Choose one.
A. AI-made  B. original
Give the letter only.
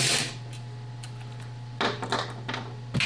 B